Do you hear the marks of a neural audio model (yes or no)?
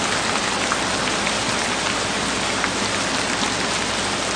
no